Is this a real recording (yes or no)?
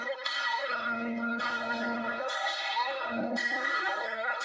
no